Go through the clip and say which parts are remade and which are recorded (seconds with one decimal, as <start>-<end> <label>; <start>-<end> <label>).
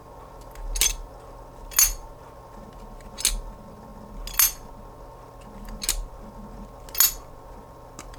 0.0-8.2 recorded